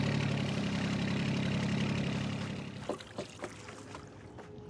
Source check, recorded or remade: recorded